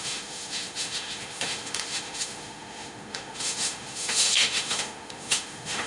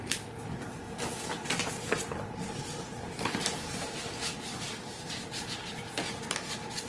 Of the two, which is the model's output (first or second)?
first